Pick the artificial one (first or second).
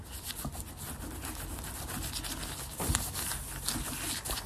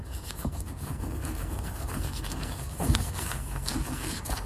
second